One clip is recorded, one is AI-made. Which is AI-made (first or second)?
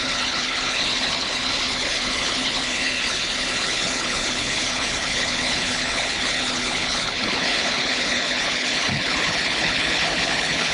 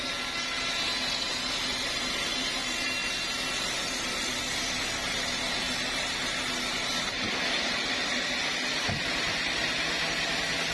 first